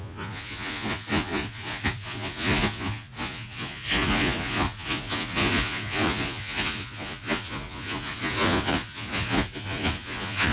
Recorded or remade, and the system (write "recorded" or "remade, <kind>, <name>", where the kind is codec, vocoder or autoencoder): remade, vocoder, Vocos